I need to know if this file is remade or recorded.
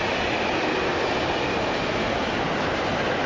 recorded